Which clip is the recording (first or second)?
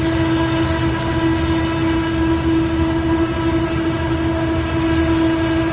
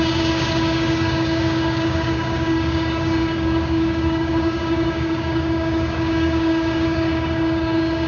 first